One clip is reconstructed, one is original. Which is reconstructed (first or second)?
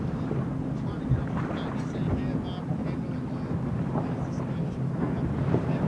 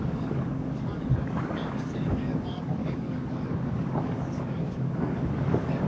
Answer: second